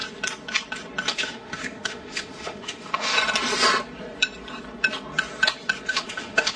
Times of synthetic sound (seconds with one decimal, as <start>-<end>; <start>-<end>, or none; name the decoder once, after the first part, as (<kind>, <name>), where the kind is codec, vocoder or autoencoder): 1.1-3.1 (autoencoder, DAC-VAE); 5.9-6.6